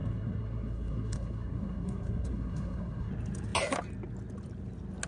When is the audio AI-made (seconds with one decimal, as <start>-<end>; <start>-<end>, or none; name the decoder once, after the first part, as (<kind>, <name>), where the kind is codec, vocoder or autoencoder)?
0.0-3.1 (codec, SNAC)